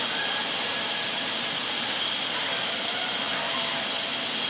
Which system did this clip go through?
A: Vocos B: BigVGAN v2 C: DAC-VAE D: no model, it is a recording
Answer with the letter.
D